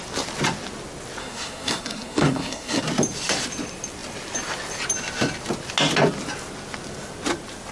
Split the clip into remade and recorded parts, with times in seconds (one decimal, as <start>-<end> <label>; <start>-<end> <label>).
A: 0.0-1.2 recorded; 1.2-2.8 remade; 2.8-7.7 recorded